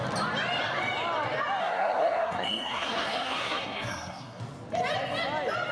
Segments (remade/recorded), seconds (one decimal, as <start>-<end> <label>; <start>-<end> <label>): 0.0-1.6 recorded; 1.6-4.4 remade; 4.4-5.7 recorded